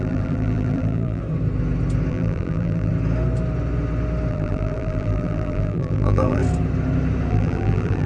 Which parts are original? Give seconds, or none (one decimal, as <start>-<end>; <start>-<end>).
1.2-2.1; 2.9-4.3; 6.4-7.3